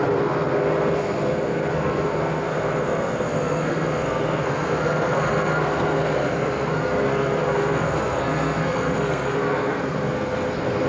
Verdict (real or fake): fake